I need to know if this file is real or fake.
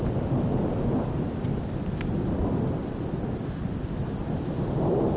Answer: fake